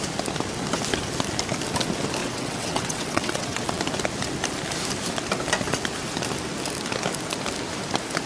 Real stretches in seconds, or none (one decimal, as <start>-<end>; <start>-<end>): 0.0-2.2; 3.8-8.3